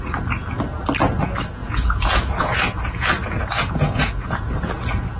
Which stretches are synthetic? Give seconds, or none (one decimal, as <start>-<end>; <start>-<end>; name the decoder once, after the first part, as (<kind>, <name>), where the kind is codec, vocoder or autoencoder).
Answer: 1.6-4.7 (vocoder, Vocos)